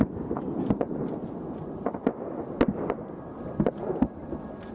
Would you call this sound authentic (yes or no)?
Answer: yes